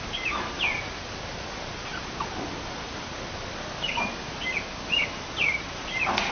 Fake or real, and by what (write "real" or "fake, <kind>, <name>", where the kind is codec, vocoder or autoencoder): real